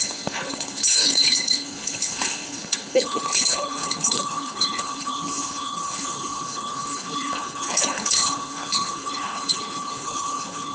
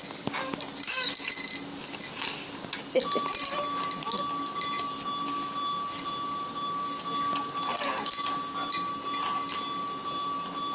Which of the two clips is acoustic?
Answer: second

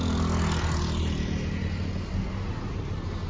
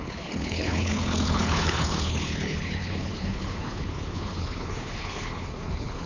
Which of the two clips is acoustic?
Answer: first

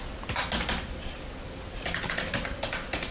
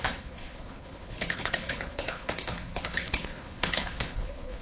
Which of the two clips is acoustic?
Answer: first